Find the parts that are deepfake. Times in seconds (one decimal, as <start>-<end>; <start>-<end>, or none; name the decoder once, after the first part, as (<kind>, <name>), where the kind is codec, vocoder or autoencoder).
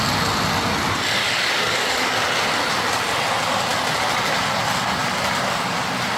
1.2-2.1 (codec, DAC)